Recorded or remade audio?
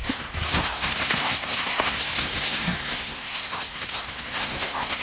remade